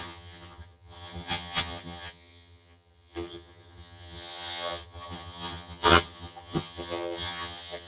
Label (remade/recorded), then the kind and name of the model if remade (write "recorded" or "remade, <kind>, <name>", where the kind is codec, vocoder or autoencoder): remade, vocoder, HiFi-GAN